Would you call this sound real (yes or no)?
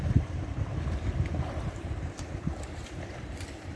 no